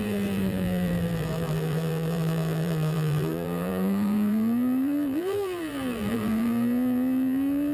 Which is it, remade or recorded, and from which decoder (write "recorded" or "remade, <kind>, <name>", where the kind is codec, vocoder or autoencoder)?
remade, vocoder, BigVGAN v2